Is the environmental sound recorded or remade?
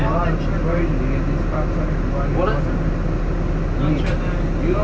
recorded